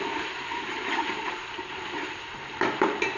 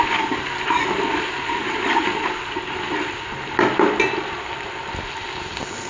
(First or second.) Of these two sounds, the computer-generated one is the first